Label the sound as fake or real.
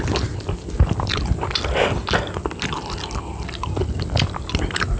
real